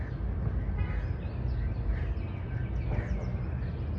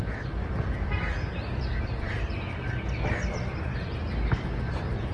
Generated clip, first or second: second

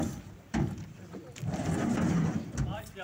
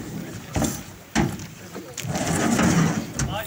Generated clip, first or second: first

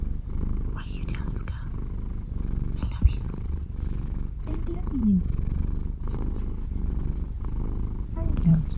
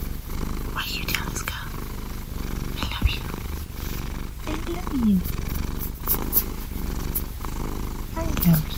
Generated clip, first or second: first